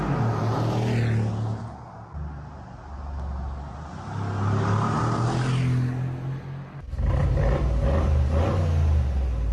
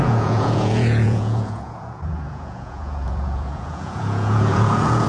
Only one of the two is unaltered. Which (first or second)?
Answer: first